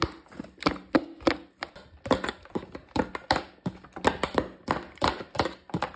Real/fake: real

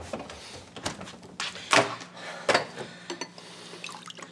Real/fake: real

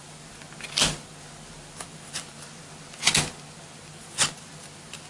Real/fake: real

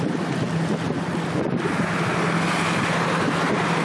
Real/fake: real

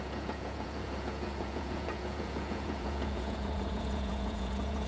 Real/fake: fake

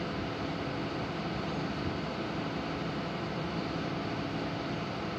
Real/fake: real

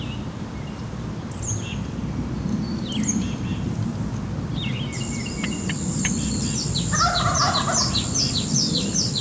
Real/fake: fake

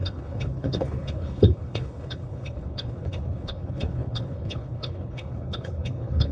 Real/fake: fake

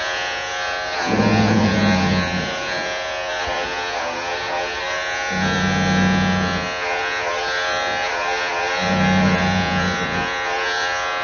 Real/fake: fake